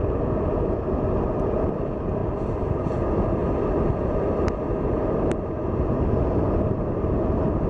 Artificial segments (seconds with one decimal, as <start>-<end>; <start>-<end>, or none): 2.2-3.0